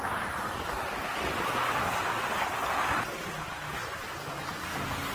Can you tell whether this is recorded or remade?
recorded